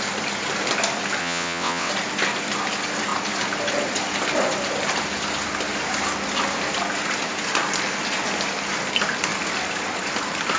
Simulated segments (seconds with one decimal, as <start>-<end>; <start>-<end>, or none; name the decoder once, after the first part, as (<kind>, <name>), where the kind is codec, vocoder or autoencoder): 1.2-1.9 (vocoder, WaveNeXt)